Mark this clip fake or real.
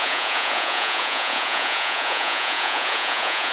fake